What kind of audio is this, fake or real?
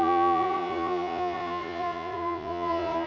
fake